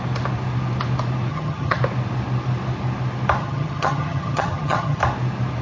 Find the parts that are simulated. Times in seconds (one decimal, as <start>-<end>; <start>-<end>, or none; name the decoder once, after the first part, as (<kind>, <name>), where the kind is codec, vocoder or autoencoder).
1.3-1.8 (vocoder, HiFi-GAN); 3.4-5.0